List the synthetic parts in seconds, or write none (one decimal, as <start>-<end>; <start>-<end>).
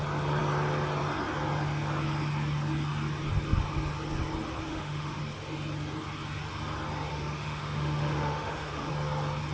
4.7-5.2; 7.1-8.9